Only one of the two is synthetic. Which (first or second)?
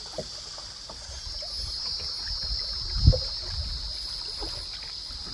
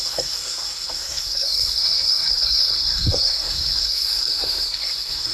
second